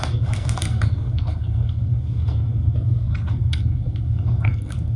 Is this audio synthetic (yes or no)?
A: yes